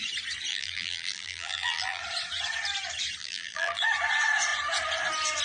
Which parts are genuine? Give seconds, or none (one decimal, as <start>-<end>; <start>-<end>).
0.0-0.5; 2.0-3.2; 3.8-5.4